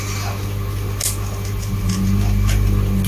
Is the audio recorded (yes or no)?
yes